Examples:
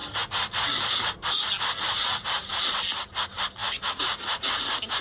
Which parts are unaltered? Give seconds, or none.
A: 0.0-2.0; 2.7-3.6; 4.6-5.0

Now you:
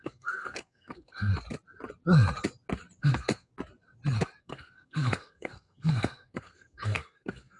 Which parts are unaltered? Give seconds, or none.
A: 1.3-3.0; 3.5-4.4

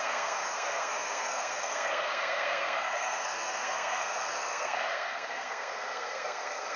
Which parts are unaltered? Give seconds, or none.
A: none